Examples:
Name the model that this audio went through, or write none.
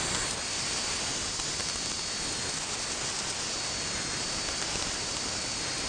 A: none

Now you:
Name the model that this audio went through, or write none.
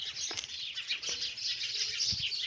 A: none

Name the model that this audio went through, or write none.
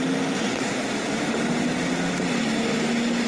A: none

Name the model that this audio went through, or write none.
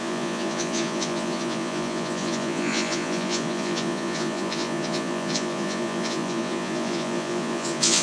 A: vocoder, Vocos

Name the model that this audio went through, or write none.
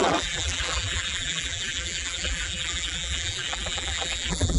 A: vocoder, BigVGAN v2